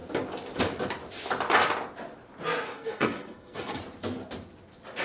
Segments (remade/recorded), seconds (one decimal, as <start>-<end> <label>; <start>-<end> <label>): 0.0-2.7 recorded; 2.7-3.8 remade; 3.8-5.0 recorded